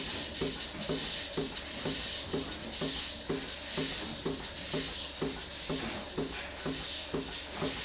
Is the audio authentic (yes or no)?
yes